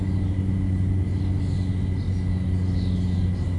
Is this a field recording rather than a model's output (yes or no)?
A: yes